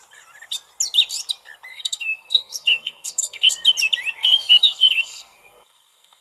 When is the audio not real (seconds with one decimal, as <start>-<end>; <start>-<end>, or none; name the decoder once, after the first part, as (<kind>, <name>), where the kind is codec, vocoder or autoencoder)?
1.7-3.5 (codec, SNAC); 4.2-6.2